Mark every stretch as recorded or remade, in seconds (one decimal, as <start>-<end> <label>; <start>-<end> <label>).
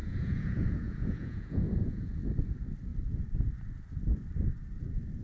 0.0-2.2 remade; 2.2-5.2 recorded